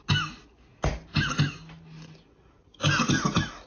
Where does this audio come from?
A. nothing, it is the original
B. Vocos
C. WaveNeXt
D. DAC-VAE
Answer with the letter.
A